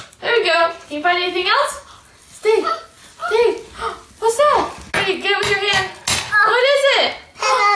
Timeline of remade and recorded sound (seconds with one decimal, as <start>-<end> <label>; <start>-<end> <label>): 0.0-1.4 remade; 1.4-2.2 recorded; 2.2-3.2 remade; 3.2-6.3 recorded; 6.3-7.7 remade